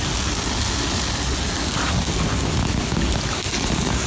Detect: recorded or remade recorded